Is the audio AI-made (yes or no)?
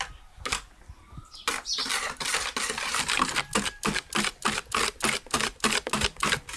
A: no